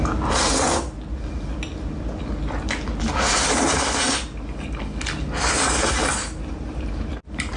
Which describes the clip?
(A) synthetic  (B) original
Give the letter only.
B